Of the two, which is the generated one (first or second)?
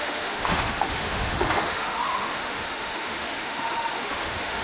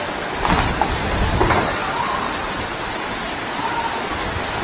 first